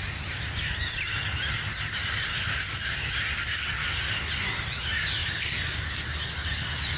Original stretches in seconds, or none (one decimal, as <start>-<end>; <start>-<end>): 0.0-7.0